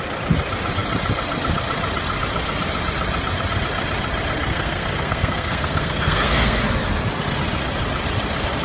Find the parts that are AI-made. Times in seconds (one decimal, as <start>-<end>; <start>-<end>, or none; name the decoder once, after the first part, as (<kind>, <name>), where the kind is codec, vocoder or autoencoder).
4.5-6.6 (codec, SNAC)